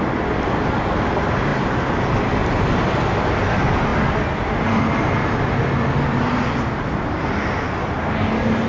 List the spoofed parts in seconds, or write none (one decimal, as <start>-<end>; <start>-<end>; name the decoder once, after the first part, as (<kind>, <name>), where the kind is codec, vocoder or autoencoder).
none